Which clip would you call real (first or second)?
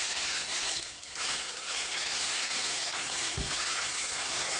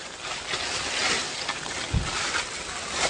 second